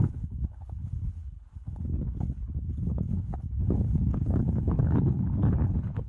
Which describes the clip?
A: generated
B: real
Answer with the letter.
A